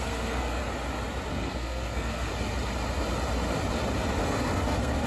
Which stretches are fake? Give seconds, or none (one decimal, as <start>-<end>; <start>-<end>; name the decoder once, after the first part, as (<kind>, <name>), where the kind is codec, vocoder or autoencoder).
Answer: 0.0-0.6 (codec, SNAC); 1.3-2.3; 4.2-5.1